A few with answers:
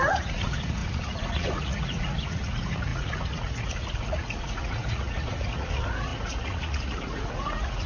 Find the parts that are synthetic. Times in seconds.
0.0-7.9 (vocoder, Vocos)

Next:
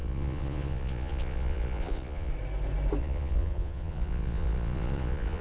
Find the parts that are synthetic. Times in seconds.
0.0-2.3 (vocoder, Vocos); 3.0-5.4

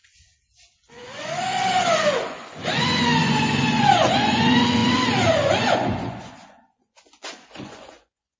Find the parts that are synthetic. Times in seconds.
0.0-8.4 (vocoder, Vocos)